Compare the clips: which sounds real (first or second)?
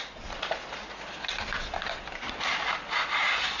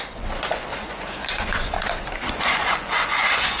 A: first